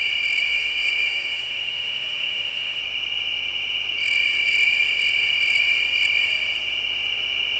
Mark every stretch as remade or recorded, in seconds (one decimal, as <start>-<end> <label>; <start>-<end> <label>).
0.0-0.5 recorded; 0.5-2.8 remade; 2.8-7.6 recorded